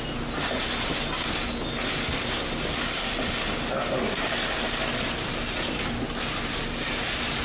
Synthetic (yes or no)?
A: no